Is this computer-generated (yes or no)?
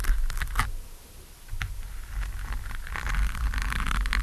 no